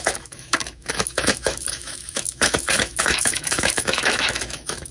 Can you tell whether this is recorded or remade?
remade